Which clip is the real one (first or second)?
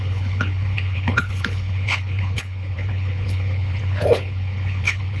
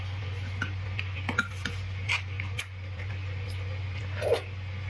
second